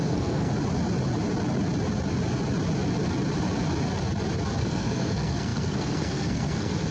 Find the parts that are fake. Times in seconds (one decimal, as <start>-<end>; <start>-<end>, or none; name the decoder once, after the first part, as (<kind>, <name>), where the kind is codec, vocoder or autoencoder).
0.0-0.5 (codec, SNAC); 4.6-6.9